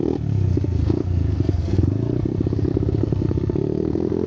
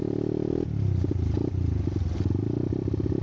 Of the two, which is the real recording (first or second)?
second